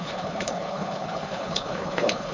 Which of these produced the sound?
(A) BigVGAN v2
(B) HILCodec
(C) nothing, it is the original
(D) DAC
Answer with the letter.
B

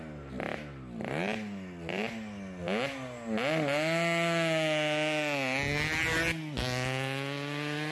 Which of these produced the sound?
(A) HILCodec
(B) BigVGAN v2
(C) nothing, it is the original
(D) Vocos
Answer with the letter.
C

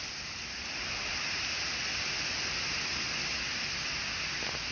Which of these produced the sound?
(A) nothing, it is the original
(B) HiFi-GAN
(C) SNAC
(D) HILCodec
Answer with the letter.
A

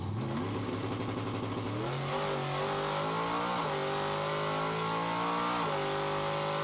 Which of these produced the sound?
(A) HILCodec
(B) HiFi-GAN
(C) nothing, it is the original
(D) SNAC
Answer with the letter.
C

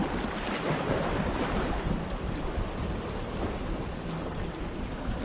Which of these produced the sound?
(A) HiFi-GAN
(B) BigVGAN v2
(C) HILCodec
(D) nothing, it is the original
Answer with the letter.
D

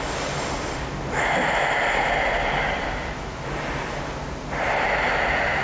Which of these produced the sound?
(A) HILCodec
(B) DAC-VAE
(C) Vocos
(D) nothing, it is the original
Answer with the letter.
D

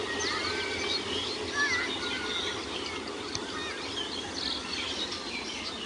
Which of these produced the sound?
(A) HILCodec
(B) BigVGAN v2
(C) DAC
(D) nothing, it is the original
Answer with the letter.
D